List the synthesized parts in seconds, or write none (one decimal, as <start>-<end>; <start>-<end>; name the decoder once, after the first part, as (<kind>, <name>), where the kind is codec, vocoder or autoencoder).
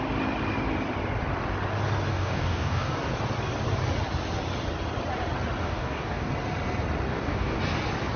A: 2.1-2.9 (codec, DAC); 5.6-6.3; 7.1-7.6